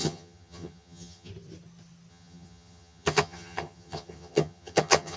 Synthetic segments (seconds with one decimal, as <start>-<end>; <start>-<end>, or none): 0.0-1.3; 2.1-5.2